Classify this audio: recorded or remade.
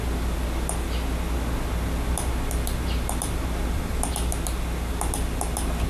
recorded